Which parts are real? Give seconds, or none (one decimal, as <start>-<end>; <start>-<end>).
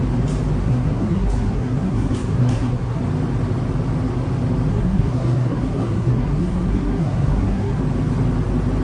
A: 0.0-0.6; 3.0-4.7; 7.8-8.8